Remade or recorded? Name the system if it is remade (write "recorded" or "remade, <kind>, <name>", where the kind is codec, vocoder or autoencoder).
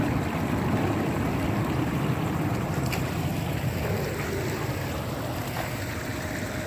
recorded